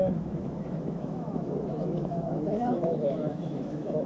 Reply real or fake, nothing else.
fake